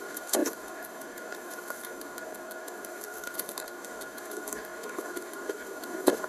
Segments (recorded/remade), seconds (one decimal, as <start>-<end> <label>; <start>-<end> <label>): 0.0-6.3 remade